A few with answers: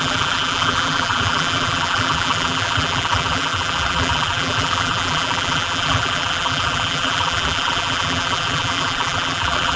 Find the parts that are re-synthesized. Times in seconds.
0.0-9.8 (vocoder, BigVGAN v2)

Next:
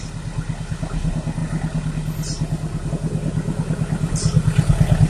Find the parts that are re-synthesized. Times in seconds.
none

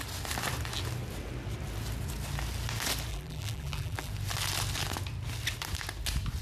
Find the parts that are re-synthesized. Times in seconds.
3.1-4.1 (vocoder, BigVGAN v2)

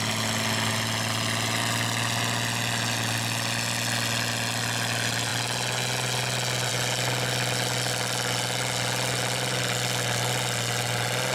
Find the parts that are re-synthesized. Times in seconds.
none

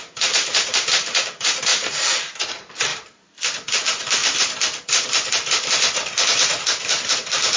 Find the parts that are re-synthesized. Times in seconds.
0.0-7.6 (vocoder, BigVGAN v2)